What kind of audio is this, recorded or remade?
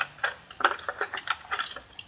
remade